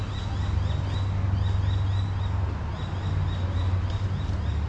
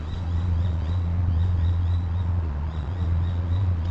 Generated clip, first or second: second